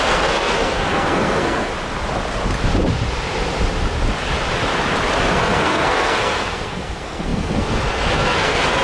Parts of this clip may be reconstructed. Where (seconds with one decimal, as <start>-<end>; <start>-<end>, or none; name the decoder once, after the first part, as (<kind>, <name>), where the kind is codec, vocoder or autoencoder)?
0.0-1.7 (codec, SNAC); 5.2-8.8